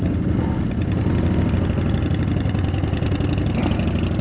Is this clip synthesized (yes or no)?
no